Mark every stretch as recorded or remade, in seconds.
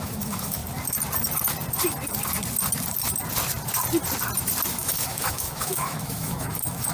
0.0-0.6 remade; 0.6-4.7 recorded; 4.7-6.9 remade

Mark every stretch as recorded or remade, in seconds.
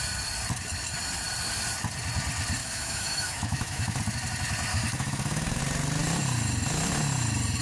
0.0-2.6 recorded; 2.6-4.0 remade; 4.0-4.7 recorded; 4.7-5.6 remade; 5.6-7.6 recorded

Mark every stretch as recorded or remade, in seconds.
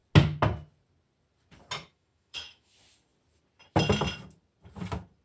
0.0-1.9 recorded; 1.9-2.7 remade; 2.7-5.2 recorded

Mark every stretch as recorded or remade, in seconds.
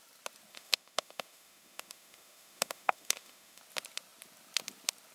0.0-0.5 recorded; 0.5-3.6 remade; 3.6-5.1 recorded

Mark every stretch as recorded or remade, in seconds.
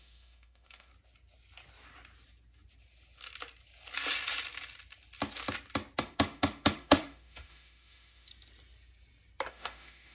0.0-0.9 remade; 0.9-6.0 recorded; 6.0-8.3 remade; 8.3-9.5 recorded; 9.5-10.1 remade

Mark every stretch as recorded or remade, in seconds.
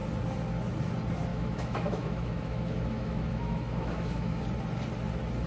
0.0-1.3 recorded; 1.3-4.4 remade; 4.4-5.5 recorded